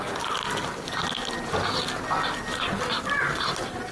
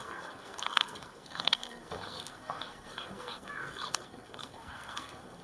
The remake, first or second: second